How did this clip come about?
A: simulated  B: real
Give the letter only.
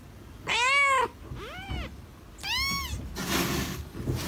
B